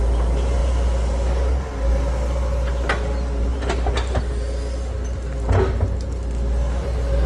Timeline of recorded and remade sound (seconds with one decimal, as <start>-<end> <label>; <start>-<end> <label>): 0.0-7.3 recorded